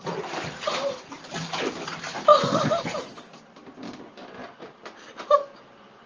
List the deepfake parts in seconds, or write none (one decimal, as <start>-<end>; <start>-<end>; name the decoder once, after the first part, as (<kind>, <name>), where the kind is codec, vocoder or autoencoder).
none